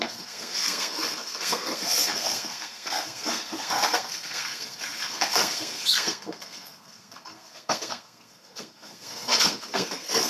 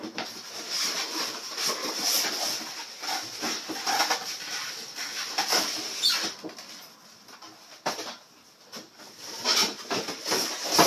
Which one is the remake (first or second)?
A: first